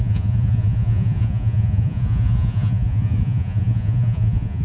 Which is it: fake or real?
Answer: fake